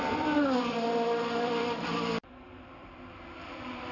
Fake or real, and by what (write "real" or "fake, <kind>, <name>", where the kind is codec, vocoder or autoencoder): fake, vocoder, BigVGAN v2